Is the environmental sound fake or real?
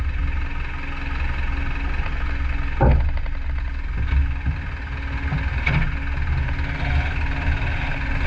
real